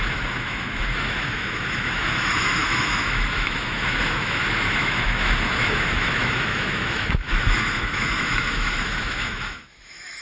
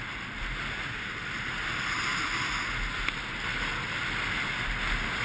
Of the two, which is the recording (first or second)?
second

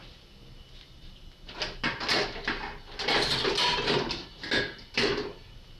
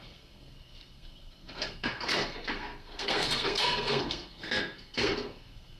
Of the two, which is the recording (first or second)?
first